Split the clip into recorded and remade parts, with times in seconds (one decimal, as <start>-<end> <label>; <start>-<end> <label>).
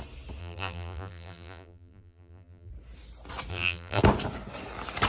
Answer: 0.0-0.4 recorded; 0.4-2.7 remade; 2.7-3.5 recorded; 3.5-4.0 remade; 4.0-5.1 recorded